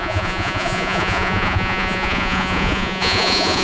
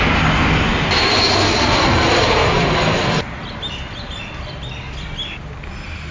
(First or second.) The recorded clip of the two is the second